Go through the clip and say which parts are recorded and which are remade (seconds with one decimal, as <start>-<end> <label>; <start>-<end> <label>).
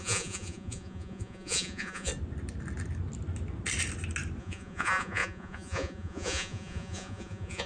0.0-2.1 remade; 2.1-4.4 recorded; 4.4-7.7 remade